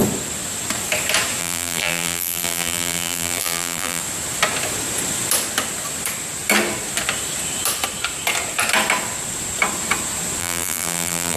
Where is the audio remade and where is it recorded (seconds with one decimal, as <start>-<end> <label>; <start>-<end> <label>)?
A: 0.0-1.4 recorded; 1.4-4.0 remade; 4.0-10.4 recorded; 10.4-11.4 remade